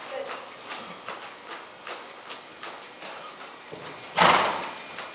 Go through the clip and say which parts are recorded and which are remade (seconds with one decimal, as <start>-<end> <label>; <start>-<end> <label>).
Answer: 0.0-2.4 recorded; 2.4-5.1 remade